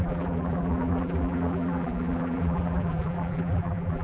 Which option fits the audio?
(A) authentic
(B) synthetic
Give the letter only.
B